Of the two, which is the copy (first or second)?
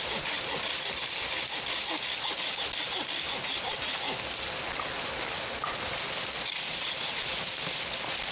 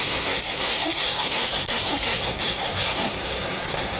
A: second